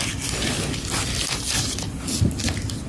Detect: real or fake real